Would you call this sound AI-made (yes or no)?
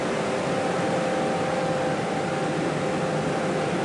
no